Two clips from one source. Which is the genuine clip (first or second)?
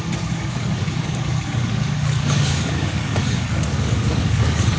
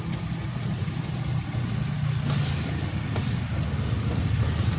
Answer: second